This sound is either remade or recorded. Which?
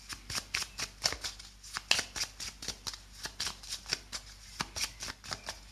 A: recorded